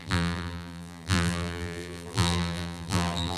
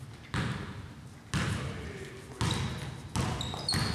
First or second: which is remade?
first